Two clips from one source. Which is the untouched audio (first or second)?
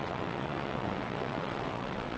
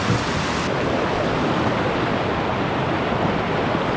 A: second